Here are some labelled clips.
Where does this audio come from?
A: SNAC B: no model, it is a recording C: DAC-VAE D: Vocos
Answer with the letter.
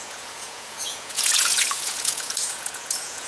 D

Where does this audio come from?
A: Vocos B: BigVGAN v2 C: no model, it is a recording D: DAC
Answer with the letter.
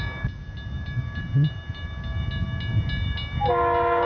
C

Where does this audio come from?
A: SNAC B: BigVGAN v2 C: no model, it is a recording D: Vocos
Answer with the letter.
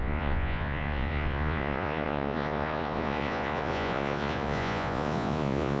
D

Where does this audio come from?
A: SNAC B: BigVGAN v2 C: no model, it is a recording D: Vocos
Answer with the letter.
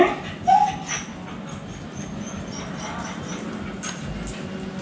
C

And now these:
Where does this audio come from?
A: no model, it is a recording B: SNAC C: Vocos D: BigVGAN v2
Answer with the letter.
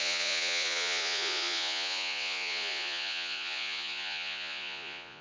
C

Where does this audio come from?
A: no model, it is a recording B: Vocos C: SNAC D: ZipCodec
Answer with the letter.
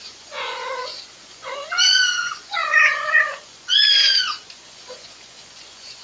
B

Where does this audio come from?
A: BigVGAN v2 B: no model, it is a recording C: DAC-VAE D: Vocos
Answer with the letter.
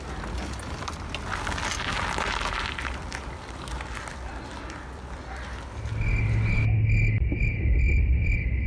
B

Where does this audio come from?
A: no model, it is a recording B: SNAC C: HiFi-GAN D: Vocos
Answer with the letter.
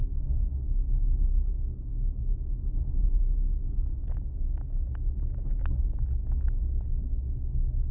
A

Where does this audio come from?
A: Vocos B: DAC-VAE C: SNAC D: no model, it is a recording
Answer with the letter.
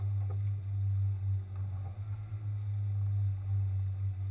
D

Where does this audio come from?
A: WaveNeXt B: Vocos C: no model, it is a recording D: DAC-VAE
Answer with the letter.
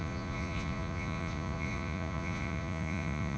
B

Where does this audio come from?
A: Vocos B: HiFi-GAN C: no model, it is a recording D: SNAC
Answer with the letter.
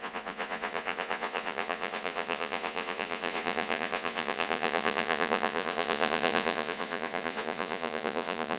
A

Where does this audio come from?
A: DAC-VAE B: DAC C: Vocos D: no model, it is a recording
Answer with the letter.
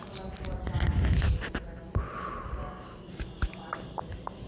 D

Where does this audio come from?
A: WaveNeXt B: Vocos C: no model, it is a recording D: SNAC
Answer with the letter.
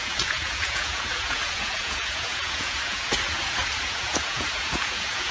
B